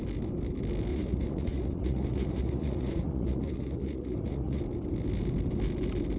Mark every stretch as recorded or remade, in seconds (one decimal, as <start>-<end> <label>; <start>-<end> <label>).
0.0-0.9 recorded; 0.9-4.6 remade; 4.6-6.2 recorded